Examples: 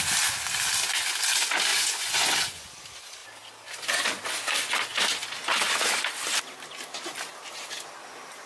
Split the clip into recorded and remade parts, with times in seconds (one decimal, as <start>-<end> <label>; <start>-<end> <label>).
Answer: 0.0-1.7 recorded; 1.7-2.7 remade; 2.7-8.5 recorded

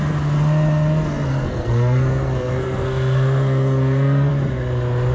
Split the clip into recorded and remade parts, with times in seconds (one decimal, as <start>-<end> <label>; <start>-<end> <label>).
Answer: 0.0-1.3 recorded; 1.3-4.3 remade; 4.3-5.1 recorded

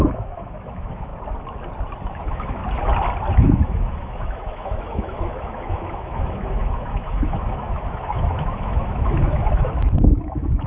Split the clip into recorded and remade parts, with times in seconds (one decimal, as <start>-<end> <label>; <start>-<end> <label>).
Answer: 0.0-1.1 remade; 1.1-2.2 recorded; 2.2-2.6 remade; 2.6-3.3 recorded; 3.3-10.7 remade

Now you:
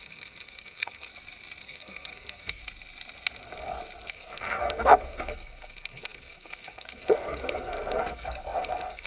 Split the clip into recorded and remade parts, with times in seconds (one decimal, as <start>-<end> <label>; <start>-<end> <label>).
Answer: 0.0-1.1 remade; 1.1-1.6 recorded; 1.6-2.6 remade; 2.6-4.1 recorded; 4.1-9.1 remade